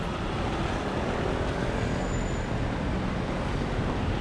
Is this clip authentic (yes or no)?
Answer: yes